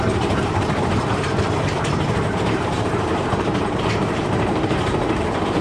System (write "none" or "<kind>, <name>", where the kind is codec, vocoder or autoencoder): vocoder, BigVGAN v2